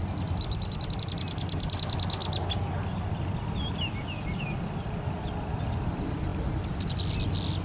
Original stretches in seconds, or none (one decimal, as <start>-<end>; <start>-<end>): 0.0-7.6